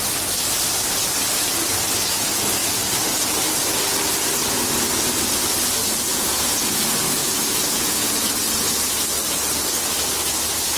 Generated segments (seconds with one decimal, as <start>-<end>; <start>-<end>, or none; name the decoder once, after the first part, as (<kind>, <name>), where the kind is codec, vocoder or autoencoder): 6.1-6.8 (vocoder, Vocos); 7.2-8.1